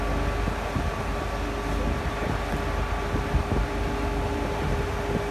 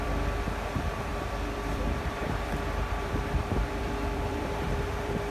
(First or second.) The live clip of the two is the first